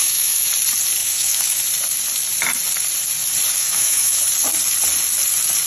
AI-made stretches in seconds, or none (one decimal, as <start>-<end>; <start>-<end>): 0.0-0.5; 1.0-1.6; 3.6-4.2